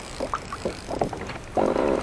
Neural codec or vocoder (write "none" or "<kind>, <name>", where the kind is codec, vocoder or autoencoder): none